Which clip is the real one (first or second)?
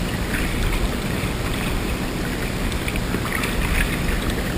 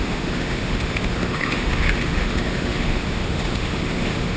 first